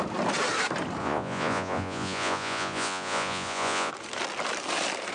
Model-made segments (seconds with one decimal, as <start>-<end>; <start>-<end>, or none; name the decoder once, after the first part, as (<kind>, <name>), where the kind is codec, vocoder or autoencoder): 1.0-3.9 (vocoder, Vocos)